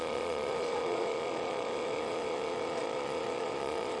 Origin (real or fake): fake